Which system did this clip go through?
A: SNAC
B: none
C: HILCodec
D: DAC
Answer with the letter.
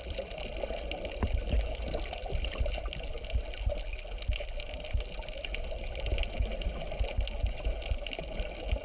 B